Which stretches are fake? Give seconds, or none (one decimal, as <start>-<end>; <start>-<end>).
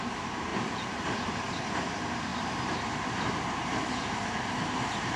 0.0-2.3; 3.5-5.2